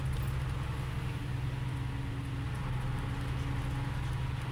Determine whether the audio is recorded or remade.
recorded